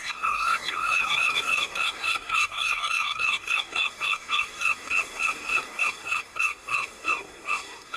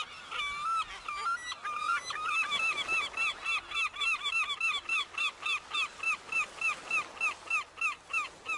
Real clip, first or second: second